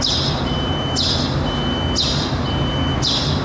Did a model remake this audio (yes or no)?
no